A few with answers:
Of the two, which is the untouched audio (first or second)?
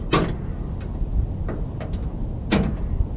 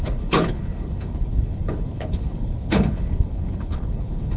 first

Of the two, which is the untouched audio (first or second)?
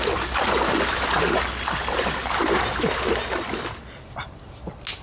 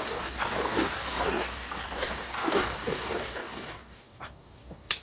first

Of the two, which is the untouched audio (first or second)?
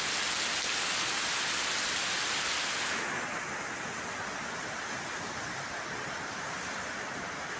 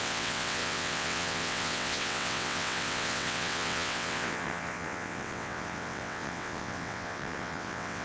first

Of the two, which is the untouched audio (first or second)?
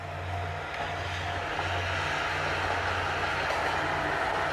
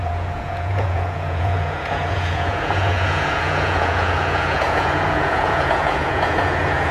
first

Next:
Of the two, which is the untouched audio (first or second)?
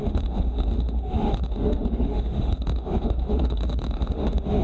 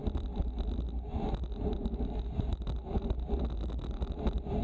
second